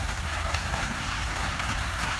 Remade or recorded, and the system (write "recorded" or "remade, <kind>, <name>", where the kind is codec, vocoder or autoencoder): remade, codec, SNAC